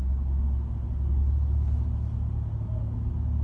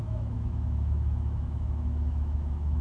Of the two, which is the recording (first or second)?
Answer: first